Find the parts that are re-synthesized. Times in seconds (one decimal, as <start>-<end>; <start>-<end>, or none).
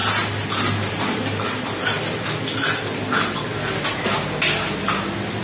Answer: none